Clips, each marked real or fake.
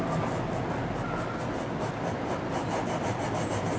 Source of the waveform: real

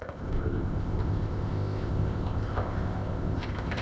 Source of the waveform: fake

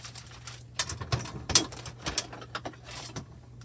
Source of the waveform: real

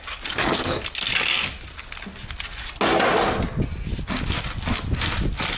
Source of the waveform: real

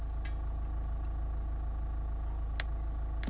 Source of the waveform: real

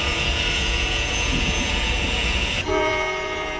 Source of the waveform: fake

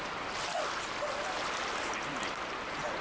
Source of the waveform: real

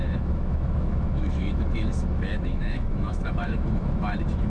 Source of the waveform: fake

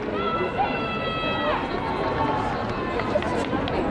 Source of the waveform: real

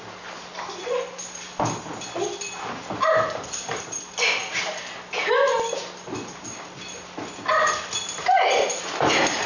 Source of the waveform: real